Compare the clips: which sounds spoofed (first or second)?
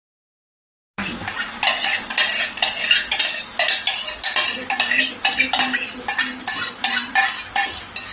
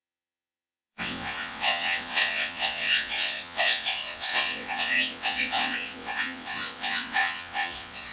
second